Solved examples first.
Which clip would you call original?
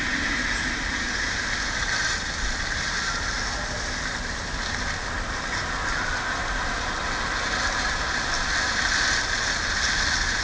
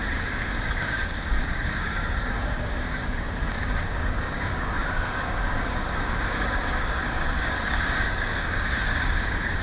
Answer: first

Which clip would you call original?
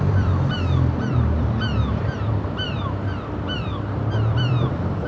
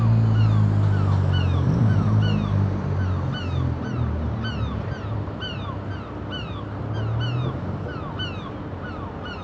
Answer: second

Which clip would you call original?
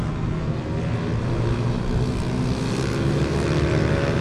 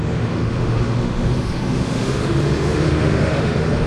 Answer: first